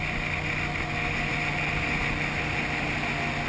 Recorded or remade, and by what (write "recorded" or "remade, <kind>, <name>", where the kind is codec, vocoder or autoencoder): recorded